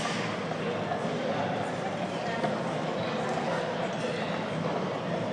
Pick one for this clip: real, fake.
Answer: real